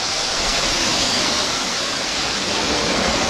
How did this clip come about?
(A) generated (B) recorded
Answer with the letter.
A